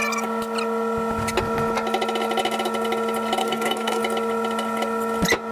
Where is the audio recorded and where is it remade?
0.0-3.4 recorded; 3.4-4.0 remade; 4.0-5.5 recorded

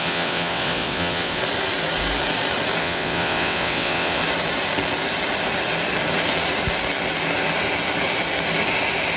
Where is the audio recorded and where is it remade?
0.0-1.4 remade; 1.4-2.8 recorded; 2.8-4.2 remade; 4.2-9.2 recorded

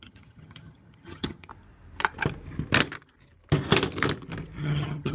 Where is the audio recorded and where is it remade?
0.0-1.5 remade; 1.5-4.6 recorded; 4.6-5.1 remade

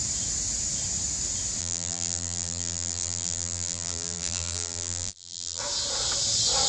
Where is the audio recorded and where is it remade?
0.0-1.6 recorded; 1.6-5.6 remade; 5.6-6.7 recorded